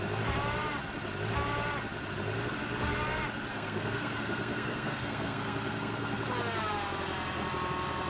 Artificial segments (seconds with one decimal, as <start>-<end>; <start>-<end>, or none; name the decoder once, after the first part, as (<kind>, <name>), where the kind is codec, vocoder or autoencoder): 3.5-6.2 (codec, SNAC)